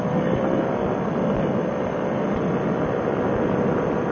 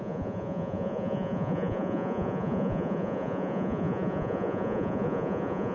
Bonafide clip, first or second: first